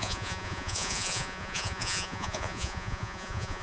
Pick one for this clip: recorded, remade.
remade